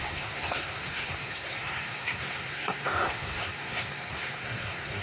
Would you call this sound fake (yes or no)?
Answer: yes